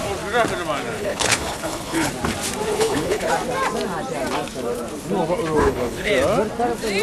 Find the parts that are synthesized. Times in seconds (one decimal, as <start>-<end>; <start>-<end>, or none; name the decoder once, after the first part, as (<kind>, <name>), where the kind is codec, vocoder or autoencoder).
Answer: 1.0-2.1 (codec, HILCodec); 2.7-3.3; 5.6-6.1